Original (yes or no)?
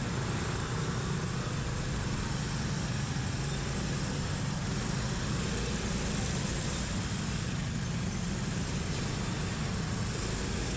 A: yes